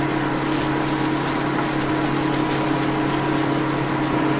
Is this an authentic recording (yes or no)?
yes